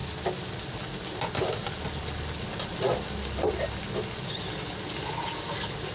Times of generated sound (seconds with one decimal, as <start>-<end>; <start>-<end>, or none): none